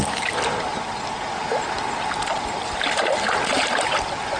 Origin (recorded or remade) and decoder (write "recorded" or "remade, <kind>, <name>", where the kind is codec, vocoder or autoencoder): recorded